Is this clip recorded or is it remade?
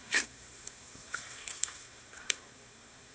remade